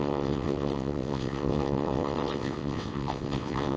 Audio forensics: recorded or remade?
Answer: remade